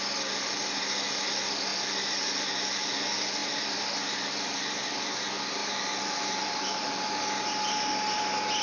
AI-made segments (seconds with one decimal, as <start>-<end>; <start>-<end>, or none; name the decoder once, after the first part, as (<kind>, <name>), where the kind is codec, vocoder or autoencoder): 1.7-2.5 (vocoder, BigVGAN v2); 3.4-4.9; 5.6-7.1